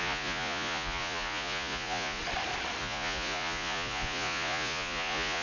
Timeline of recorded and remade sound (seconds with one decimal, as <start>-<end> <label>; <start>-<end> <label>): 0.0-2.2 remade; 2.2-2.8 recorded; 2.8-5.4 remade

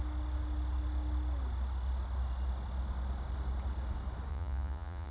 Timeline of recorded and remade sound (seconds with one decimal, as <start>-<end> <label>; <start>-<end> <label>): 0.0-4.3 recorded; 4.3-5.1 remade

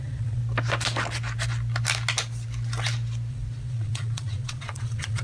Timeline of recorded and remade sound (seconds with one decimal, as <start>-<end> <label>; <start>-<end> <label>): 0.0-0.4 remade; 0.4-3.3 recorded; 3.3-5.2 remade